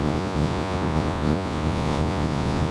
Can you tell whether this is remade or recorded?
remade